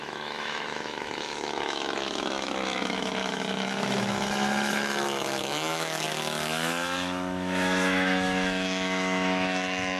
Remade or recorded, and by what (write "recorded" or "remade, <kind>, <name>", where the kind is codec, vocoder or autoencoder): remade, autoencoder, DAC-VAE